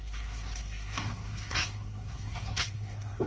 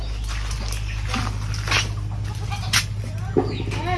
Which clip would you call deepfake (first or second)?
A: first